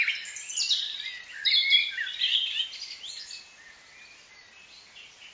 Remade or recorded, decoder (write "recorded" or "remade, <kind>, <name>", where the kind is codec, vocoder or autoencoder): recorded